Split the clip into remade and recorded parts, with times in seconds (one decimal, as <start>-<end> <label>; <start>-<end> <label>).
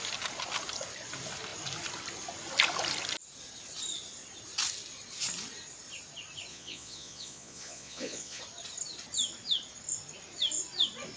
0.0-6.5 recorded; 6.5-8.4 remade; 8.4-11.2 recorded